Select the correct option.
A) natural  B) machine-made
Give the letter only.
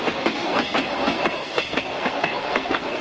B